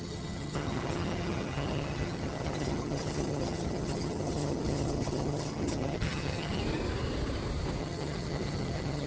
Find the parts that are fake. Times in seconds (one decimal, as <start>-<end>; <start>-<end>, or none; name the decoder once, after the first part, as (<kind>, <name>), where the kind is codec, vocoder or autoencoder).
0.0-6.6 (vocoder, HiFi-GAN); 7.8-9.1